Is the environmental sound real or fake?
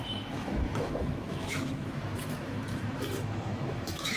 fake